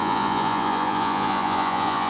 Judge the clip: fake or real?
fake